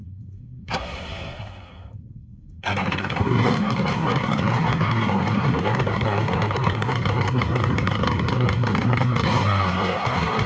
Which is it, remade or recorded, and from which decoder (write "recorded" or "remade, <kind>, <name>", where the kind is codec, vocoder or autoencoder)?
remade, codec, SNAC